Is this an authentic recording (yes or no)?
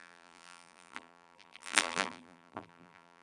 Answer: no